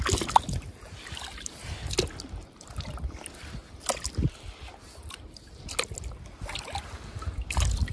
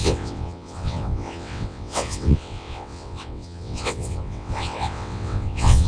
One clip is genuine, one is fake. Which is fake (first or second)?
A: second